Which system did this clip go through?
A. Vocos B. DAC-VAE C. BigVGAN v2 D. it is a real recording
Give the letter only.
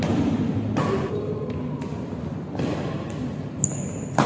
D